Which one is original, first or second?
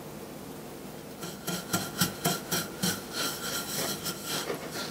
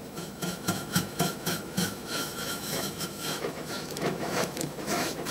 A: first